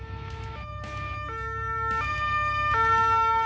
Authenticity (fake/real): real